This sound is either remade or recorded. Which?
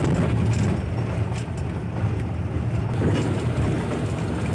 recorded